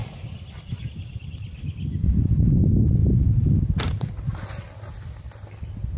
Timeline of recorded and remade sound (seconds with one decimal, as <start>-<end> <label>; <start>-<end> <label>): 0.0-3.0 recorded; 3.0-4.1 remade; 4.1-6.0 recorded